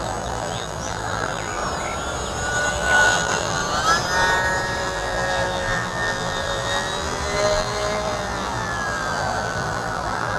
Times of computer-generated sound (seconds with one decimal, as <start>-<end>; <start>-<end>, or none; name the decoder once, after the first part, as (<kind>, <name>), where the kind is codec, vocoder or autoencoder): 0.0-1.6 (vocoder, BigVGAN v2); 2.7-3.6; 4.8-10.4